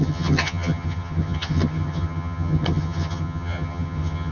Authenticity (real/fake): fake